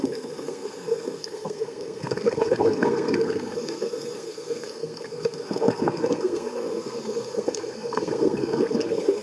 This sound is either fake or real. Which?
fake